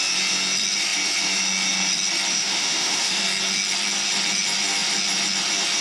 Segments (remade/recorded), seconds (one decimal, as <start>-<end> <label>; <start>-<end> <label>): 0.0-2.3 recorded; 2.3-3.2 remade; 3.2-5.8 recorded